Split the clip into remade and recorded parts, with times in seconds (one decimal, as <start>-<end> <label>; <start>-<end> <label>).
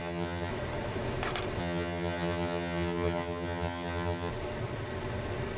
0.0-0.5 remade; 0.5-1.6 recorded; 1.6-4.3 remade; 4.3-5.6 recorded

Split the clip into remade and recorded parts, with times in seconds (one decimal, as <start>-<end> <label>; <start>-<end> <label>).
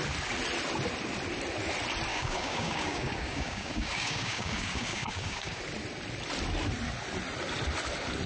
0.0-2.1 recorded; 2.1-5.6 remade; 5.6-8.3 recorded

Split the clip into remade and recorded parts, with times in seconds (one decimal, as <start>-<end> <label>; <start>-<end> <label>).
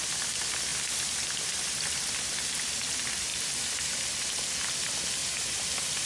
0.0-0.7 recorded; 0.7-2.2 remade; 2.2-3.3 recorded; 3.3-4.1 remade; 4.1-5.2 recorded; 5.2-6.1 remade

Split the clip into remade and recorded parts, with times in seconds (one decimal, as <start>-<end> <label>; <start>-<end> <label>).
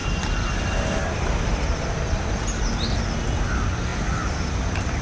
0.0-3.0 remade; 3.0-5.0 recorded